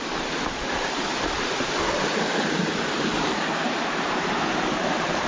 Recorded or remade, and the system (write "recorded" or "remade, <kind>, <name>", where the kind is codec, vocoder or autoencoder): remade, vocoder, BigVGAN v2